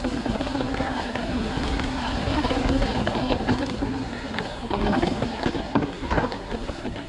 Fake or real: fake